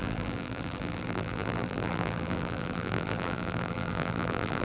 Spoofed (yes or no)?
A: yes